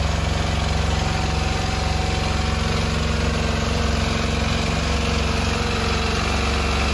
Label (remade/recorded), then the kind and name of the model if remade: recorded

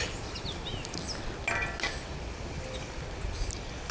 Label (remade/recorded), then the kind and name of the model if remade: recorded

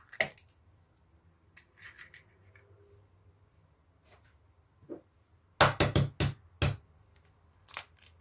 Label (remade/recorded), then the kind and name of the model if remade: recorded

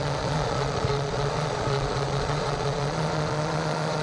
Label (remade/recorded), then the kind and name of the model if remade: remade, vocoder, Vocos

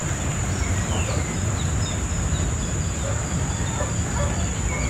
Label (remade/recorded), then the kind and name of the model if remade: recorded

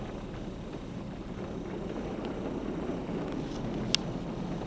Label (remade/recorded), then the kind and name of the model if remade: recorded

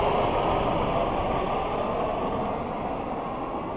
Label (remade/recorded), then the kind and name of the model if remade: recorded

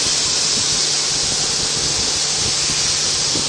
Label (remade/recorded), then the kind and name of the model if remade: recorded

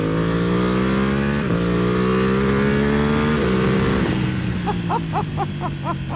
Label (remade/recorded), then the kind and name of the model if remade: recorded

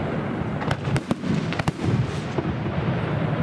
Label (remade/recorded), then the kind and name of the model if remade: recorded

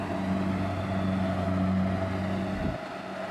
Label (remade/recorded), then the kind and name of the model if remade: recorded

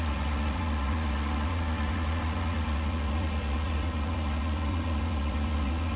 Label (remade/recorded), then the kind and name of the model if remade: remade, vocoder, Vocos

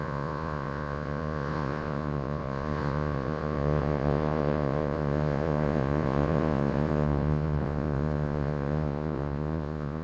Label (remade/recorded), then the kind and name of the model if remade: remade, vocoder, Vocos